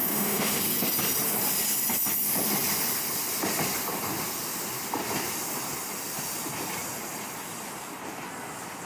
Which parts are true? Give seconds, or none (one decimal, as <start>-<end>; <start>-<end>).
0.6-8.9